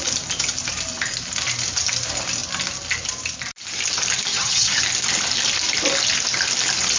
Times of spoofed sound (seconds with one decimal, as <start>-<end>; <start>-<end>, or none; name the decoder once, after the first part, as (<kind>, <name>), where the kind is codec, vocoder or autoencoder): 4.3-4.8 (vocoder, HiFi-GAN)